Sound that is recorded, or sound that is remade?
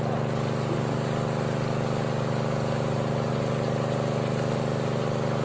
recorded